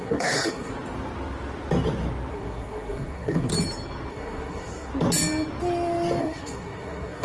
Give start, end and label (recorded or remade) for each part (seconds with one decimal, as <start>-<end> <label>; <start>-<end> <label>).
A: 0.0-0.7 remade; 0.7-2.3 recorded; 2.3-3.5 remade; 3.5-4.1 recorded; 4.1-4.9 remade; 4.9-6.2 recorded; 6.2-7.2 remade